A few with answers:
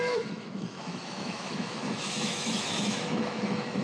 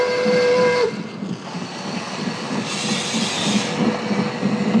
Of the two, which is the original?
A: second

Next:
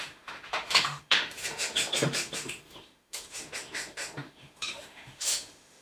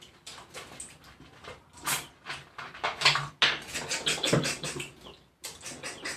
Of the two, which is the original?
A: second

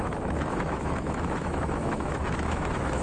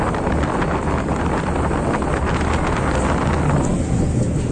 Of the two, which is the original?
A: second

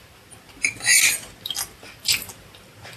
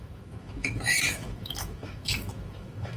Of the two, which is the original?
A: first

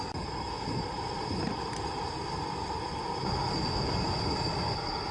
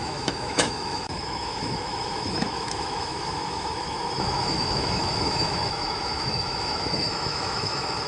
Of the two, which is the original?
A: first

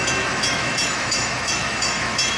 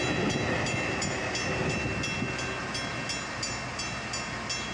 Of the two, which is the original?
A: second